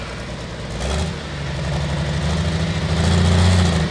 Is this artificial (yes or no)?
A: no